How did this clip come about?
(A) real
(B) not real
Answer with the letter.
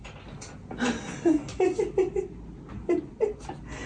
A